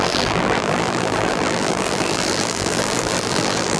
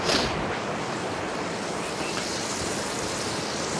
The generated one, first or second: first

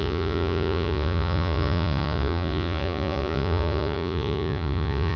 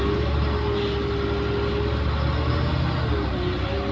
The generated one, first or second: first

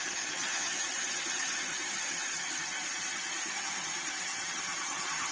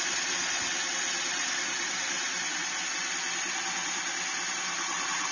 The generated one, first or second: first